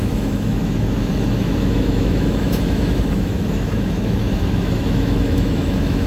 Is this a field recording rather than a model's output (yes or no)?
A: no